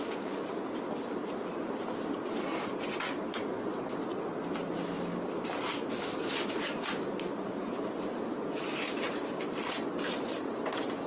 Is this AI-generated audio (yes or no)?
no